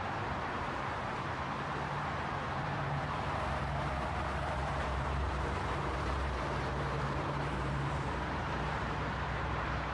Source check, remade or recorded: remade